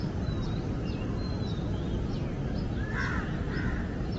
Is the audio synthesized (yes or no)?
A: no